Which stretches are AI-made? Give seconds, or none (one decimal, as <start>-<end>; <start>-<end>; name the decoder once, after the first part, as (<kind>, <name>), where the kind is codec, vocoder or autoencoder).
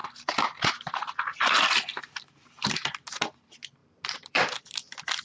3.8-5.2 (vocoder, BigVGAN v2)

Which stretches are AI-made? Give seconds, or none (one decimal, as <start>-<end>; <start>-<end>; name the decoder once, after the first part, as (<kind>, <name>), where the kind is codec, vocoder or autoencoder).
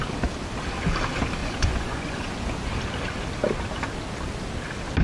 1.4-2.7 (vocoder, Vocos)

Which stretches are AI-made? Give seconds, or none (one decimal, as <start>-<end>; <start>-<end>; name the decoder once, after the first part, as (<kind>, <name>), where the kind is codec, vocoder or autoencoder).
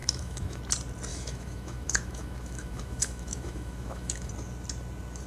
0.0-0.6 (autoencoder, DAC-VAE); 1.1-4.3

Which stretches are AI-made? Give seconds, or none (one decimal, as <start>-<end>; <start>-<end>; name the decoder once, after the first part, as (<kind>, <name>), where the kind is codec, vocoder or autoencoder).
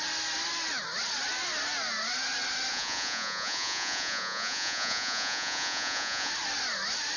2.7-6.3 (vocoder, Vocos)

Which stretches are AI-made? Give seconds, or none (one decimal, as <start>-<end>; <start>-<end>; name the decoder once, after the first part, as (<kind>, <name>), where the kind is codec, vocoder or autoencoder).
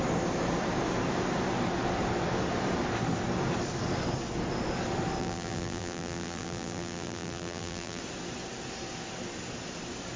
5.2-8.0 (vocoder, BigVGAN v2)